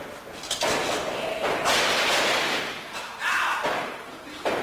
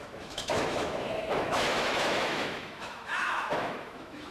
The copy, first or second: second